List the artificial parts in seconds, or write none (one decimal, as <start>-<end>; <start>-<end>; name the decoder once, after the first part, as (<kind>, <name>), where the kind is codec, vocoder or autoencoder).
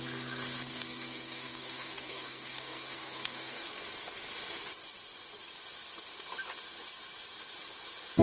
0.7-3.8 (codec, SNAC)